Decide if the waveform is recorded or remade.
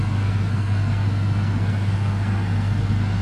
remade